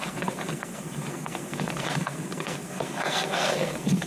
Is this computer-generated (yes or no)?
yes